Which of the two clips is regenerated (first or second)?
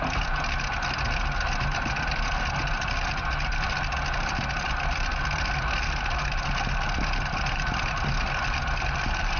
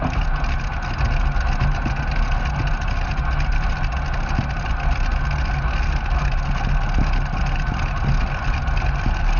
first